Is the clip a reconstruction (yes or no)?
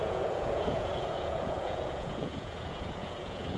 yes